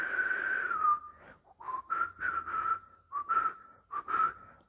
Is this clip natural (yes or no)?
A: no